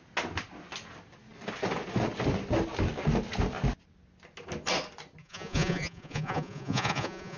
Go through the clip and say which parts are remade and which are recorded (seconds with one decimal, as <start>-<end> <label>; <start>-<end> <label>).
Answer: 0.0-5.2 recorded; 5.2-7.4 remade